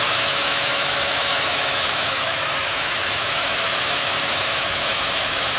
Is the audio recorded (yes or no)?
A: no